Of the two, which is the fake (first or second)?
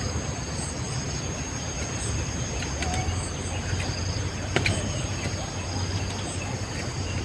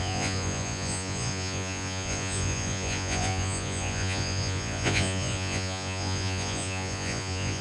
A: second